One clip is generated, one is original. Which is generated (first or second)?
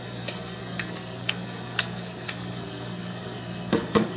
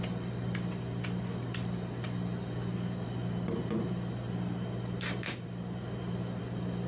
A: first